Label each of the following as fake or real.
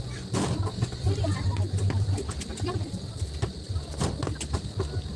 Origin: fake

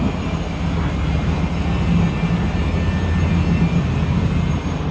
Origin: real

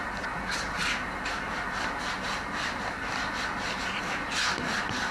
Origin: real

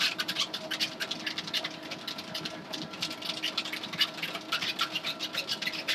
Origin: real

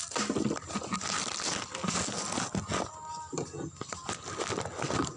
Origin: real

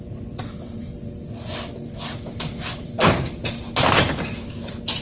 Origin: real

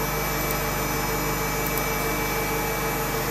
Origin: real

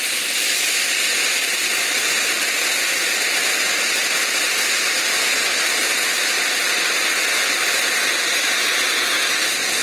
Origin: fake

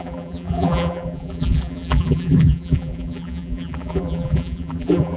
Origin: fake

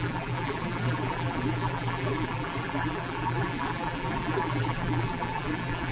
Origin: fake